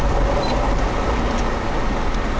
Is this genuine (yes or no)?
yes